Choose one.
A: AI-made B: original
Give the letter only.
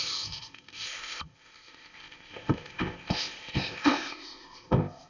A